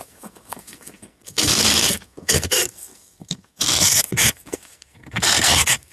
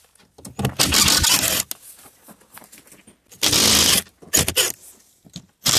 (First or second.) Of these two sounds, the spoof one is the first